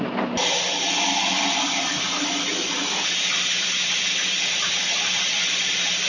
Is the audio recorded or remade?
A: recorded